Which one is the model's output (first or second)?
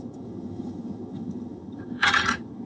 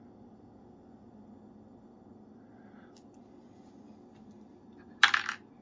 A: first